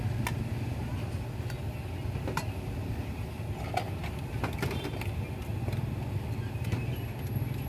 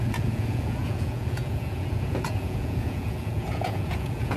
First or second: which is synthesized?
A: second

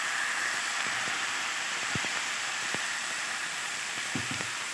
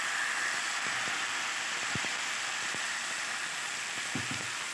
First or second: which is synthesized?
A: first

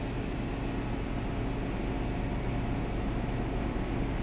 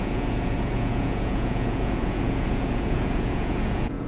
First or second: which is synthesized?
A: second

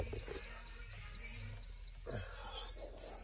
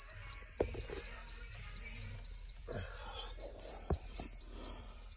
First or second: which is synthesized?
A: second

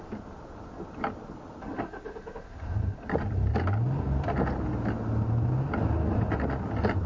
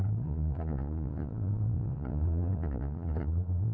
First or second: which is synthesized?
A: second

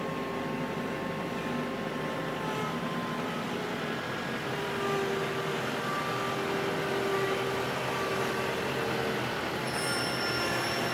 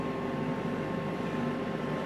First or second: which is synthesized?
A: second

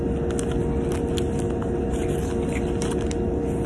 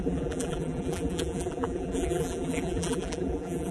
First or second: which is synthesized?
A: second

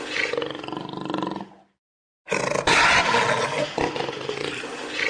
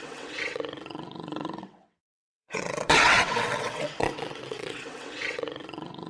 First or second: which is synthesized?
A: second